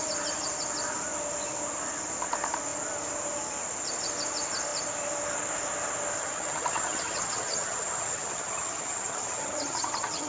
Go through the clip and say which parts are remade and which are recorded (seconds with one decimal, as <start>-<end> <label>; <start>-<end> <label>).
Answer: 0.0-6.2 recorded; 6.2-10.3 remade